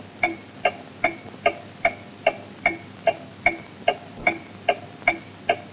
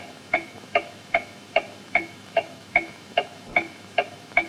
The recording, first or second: first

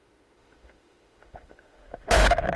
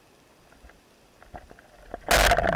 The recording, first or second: second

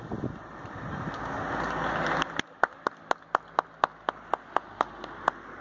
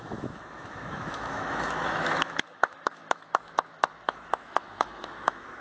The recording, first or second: first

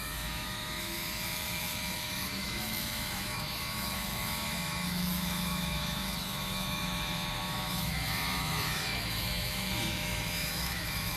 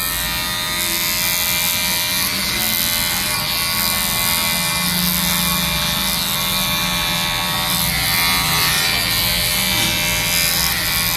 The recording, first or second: second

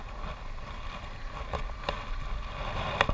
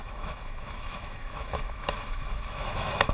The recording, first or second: first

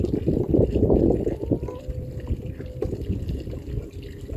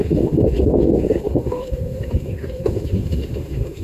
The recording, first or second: first